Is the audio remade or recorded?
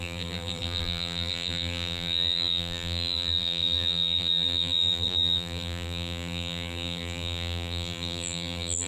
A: remade